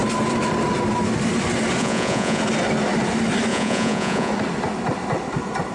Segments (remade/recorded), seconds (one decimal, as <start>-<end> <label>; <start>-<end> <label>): 0.0-1.8 recorded; 1.8-2.4 remade; 2.4-3.5 recorded; 3.5-4.3 remade; 4.3-5.7 recorded